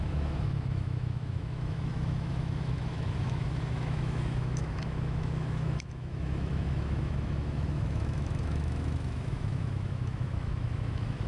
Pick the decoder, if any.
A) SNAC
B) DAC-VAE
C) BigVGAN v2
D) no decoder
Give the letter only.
B